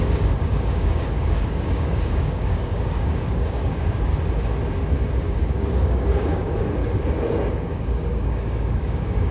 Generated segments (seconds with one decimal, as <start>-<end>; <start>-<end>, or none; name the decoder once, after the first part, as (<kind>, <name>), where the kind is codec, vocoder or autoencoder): 0.0-4.1 (codec, DAC); 5.2-6.8; 7.5-9.3